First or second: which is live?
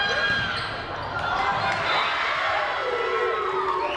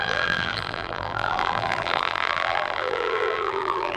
first